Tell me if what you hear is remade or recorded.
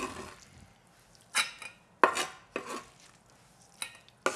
recorded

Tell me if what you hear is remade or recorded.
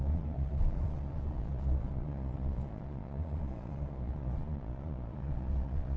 remade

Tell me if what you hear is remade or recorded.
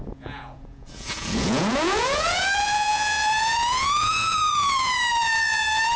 remade